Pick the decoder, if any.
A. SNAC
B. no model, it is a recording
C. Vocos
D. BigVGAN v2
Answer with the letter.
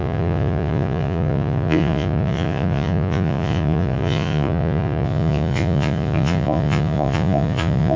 C